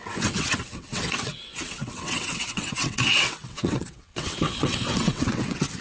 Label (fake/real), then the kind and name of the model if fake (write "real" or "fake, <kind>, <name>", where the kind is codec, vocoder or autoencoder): fake, vocoder, WaveNeXt